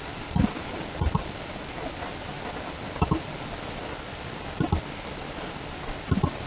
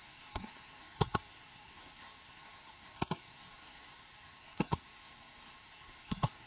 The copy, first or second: second